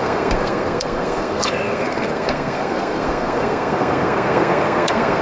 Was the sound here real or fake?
fake